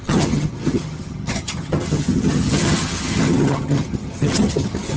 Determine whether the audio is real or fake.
fake